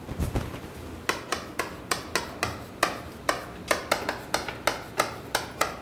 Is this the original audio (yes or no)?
yes